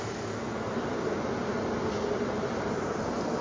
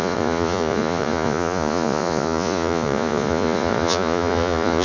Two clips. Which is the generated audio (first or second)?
second